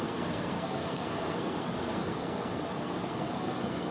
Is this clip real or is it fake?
fake